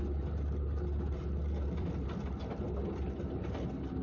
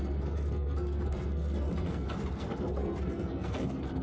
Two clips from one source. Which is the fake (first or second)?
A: second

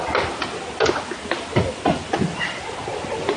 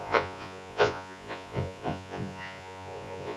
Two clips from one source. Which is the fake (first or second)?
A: second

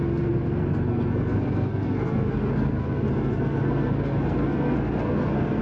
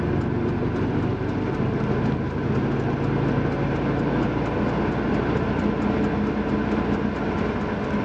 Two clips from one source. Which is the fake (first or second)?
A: first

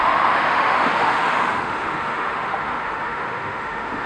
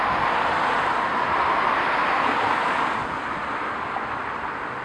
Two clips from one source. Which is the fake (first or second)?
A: first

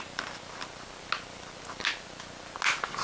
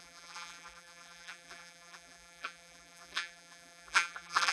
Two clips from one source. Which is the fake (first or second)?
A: second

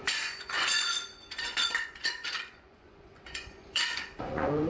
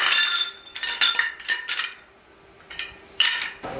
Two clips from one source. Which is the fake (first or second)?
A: first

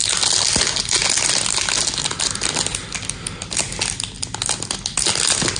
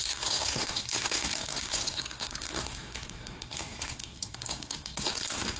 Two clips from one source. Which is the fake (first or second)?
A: second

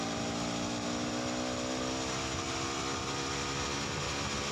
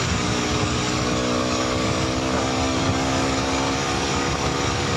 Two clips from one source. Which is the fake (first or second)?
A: second